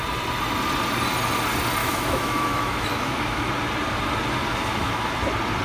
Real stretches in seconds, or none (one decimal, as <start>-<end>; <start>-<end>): 0.0-1.8; 3.5-4.5; 5.1-5.6